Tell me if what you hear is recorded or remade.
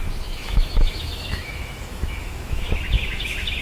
remade